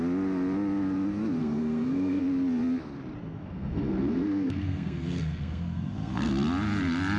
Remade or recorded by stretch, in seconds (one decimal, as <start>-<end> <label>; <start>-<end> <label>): 0.0-1.4 recorded; 1.4-2.2 remade; 2.2-3.2 recorded; 3.2-6.3 remade; 6.3-7.2 recorded